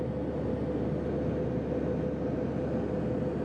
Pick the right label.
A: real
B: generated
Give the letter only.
A